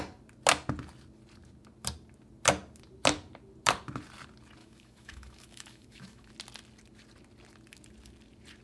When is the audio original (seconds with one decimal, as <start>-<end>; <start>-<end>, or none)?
0.0-4.6; 6.3-8.6